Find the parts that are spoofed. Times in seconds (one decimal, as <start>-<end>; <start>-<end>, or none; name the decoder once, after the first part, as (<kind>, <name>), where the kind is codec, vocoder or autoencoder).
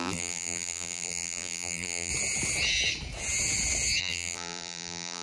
0.0-2.1 (vocoder, BigVGAN v2); 4.0-5.2